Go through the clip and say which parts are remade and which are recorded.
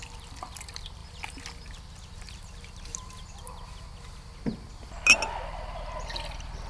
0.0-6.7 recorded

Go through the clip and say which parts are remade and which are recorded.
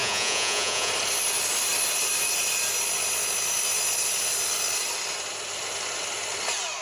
0.0-0.9 remade; 0.9-6.8 recorded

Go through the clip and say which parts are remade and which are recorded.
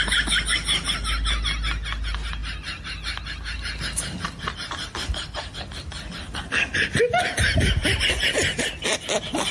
0.0-9.5 recorded